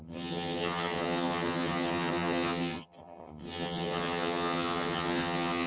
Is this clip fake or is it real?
fake